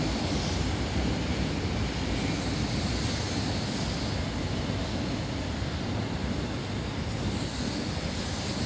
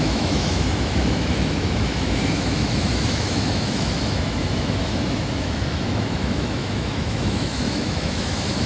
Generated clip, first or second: second